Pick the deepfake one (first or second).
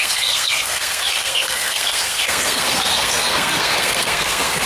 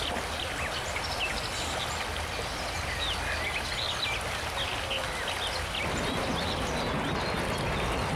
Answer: first